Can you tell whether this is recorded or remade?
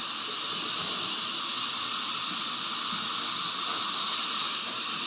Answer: recorded